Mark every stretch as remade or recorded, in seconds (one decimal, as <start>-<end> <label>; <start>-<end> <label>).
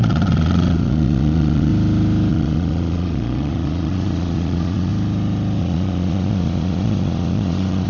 0.0-1.7 remade; 1.7-2.3 recorded; 2.3-4.9 remade; 4.9-5.6 recorded; 5.6-7.9 remade